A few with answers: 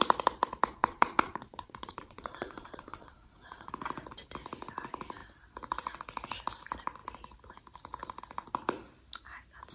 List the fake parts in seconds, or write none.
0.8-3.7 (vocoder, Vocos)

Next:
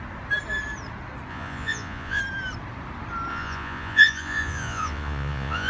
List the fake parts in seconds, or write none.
1.3-2.2 (vocoder, Vocos); 3.3-5.7